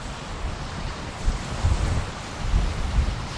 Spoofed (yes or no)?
no